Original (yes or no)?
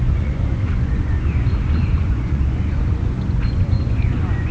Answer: no